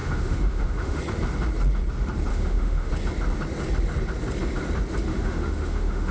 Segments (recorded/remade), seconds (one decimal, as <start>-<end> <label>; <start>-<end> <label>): 0.0-1.0 remade; 1.0-2.3 recorded; 2.3-2.9 remade; 2.9-5.1 recorded; 5.1-6.1 remade